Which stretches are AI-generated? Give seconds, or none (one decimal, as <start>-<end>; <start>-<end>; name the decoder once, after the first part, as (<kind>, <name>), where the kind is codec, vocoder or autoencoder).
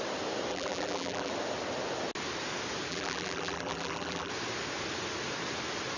0.5-1.3 (vocoder, BigVGAN v2); 2.9-4.3